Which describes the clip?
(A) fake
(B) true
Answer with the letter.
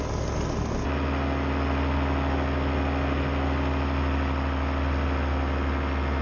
B